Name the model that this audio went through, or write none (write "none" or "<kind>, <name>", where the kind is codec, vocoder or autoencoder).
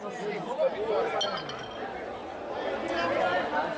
none